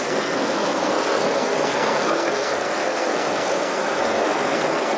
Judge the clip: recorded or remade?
remade